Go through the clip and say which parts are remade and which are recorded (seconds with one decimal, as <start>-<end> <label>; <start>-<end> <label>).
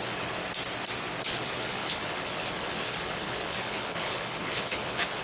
0.0-0.4 remade; 0.4-1.2 recorded; 1.2-5.2 remade